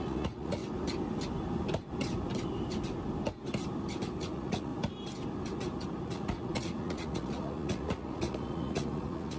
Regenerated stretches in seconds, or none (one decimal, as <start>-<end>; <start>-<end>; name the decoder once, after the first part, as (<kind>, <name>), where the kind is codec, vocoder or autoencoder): 0.0-0.6 (vocoder, Vocos); 4.2-4.7; 6.0-9.4